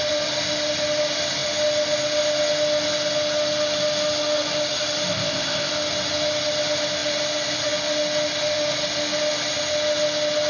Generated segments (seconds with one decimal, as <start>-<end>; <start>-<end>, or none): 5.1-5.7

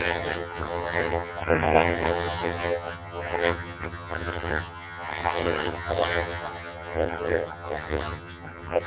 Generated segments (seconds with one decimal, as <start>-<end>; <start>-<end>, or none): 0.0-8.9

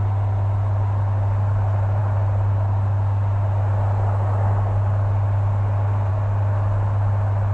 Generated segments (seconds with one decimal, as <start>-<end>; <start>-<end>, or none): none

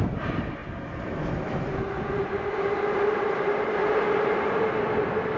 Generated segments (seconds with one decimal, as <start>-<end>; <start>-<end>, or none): 0.0-0.6; 1.9-5.4

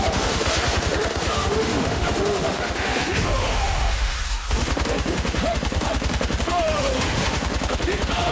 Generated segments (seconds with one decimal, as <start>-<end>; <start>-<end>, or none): 0.0-8.3

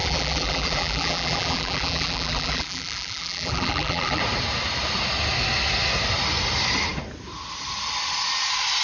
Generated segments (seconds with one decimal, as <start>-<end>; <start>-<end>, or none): 0.0-4.2

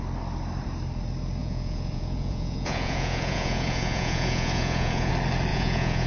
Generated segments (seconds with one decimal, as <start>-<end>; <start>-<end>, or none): 1.4-5.1; 5.5-6.1